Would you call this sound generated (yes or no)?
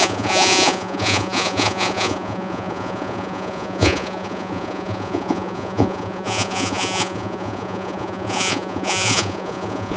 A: yes